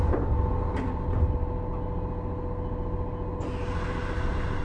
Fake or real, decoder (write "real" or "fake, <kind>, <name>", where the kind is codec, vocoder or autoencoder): real